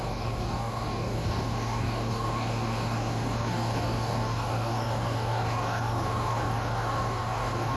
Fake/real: fake